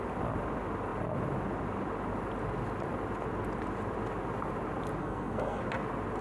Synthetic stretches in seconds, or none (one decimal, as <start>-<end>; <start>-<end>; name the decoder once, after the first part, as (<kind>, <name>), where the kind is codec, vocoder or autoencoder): 5.0-5.6 (codec, SNAC)